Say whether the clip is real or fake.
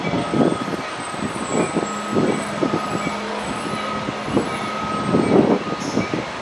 real